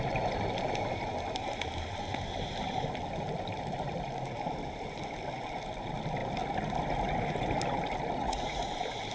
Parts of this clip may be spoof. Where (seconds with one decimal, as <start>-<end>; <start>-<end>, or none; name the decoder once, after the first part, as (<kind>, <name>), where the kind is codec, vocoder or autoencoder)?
8.2-8.7 (vocoder, Vocos)